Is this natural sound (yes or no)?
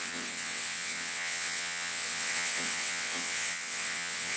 no